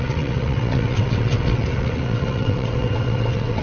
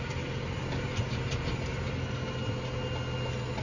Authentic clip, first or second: second